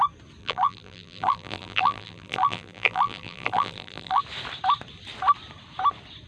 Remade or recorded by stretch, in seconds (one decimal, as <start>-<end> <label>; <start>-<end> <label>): 0.0-0.4 recorded; 0.4-4.2 remade; 4.2-6.3 recorded